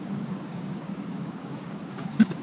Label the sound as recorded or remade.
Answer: remade